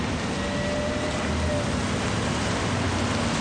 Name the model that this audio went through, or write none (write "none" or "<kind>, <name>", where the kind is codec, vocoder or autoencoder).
none